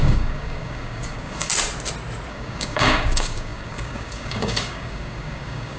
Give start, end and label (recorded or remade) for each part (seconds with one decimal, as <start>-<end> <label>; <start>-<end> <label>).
0.0-1.5 remade; 1.5-2.3 recorded; 2.3-5.8 remade